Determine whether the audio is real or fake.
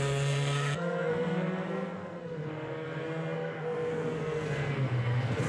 fake